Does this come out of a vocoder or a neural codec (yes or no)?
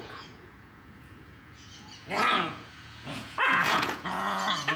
yes